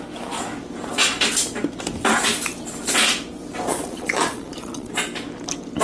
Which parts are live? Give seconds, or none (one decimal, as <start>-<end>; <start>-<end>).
0.0-3.7; 4.9-5.8